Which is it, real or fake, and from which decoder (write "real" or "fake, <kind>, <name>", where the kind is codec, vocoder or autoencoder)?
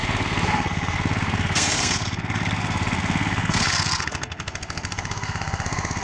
fake, codec, SNAC